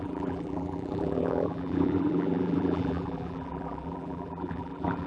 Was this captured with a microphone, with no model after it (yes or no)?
no